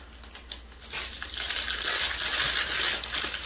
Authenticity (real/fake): real